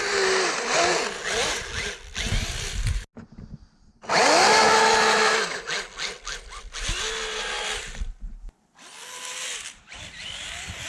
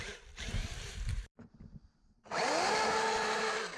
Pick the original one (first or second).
first